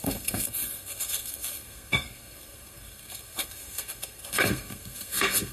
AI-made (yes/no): yes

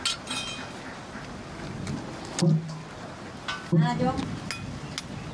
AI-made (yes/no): no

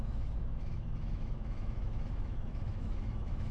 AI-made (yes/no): yes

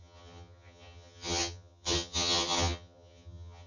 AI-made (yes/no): yes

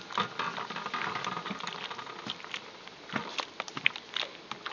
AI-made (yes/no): no